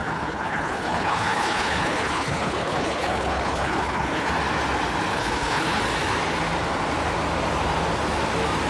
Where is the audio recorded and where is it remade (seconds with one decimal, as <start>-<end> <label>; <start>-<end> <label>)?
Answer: 0.0-4.3 remade; 4.3-5.1 recorded; 5.1-5.8 remade; 5.8-8.7 recorded